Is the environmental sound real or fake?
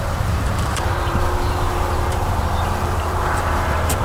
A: fake